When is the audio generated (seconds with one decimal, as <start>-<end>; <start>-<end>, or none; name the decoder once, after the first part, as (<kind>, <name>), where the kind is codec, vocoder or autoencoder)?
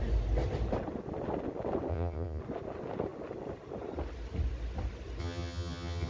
1.9-2.4 (vocoder, HiFi-GAN); 5.2-6.1